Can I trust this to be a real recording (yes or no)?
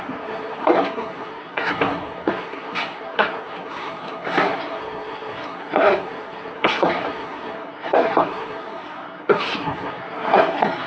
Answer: no